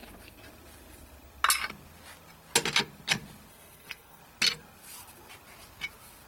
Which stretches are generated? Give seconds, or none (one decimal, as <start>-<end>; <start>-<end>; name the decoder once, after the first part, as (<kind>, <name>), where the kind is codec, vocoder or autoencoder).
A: 3.5-4.2 (codec, SNAC)